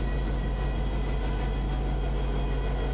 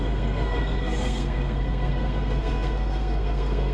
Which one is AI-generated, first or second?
second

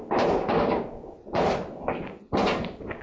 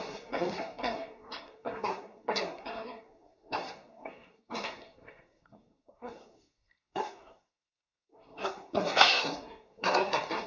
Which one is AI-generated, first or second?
second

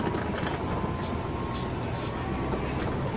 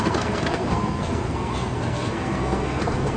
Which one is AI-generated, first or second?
second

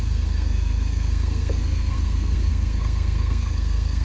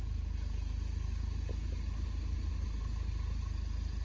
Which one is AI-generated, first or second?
first